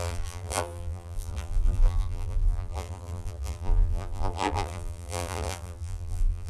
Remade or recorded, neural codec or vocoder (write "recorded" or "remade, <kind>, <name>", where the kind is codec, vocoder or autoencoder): remade, vocoder, BigVGAN v2